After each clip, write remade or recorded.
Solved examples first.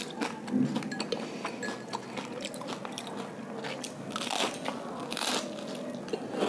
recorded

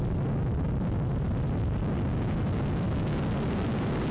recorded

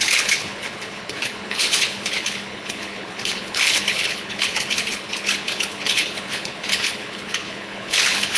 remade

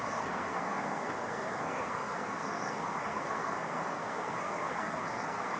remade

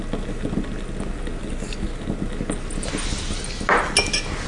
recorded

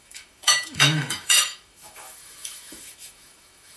remade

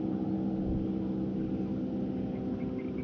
recorded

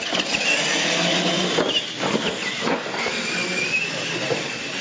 recorded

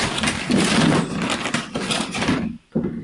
recorded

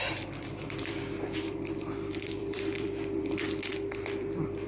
remade